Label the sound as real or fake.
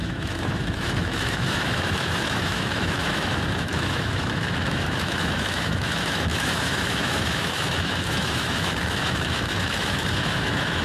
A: fake